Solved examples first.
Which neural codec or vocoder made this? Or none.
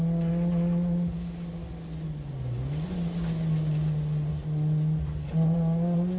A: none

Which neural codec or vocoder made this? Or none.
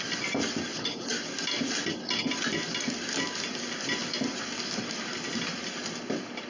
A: none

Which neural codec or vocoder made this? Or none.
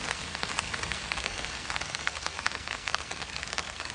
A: codec, SNAC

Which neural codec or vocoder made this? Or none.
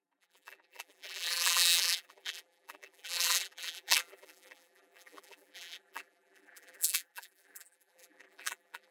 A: vocoder, BigVGAN v2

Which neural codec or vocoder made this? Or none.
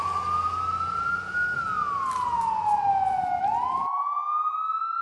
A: none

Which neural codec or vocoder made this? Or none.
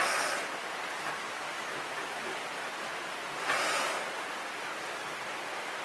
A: none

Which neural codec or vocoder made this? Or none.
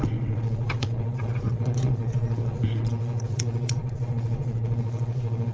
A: vocoder, Vocos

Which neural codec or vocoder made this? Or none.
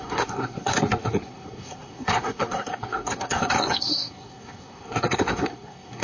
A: codec, SNAC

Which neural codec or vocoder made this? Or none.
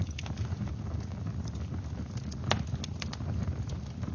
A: none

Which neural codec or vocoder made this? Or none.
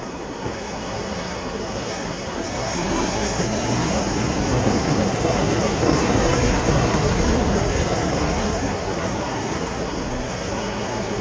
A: codec, SNAC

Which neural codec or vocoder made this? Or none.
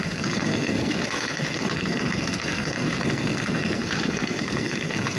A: codec, SNAC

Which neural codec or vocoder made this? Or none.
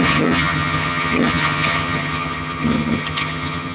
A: vocoder, HiFi-GAN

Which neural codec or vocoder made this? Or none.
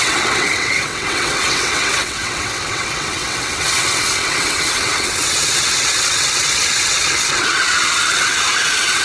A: vocoder, WaveNeXt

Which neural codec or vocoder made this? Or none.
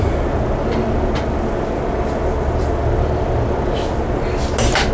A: none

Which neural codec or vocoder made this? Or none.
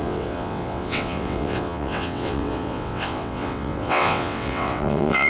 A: vocoder, WaveNeXt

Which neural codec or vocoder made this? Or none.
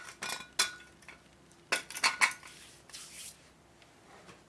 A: none